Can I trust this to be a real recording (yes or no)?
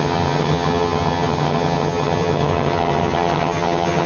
no